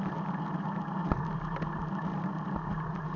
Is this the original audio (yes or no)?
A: yes